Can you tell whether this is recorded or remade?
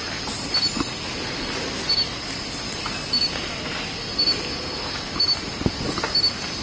recorded